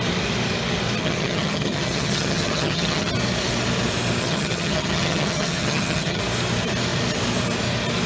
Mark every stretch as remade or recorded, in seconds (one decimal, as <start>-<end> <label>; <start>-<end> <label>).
0.0-1.0 recorded; 1.0-3.1 remade; 3.1-4.2 recorded; 4.2-6.2 remade; 6.2-8.1 recorded